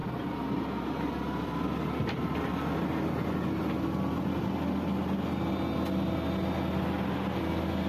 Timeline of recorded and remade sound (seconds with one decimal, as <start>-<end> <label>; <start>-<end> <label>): 0.0-7.9 recorded